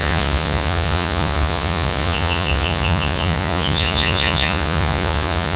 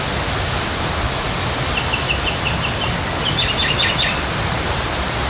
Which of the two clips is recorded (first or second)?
second